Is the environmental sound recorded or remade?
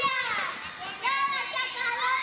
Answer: recorded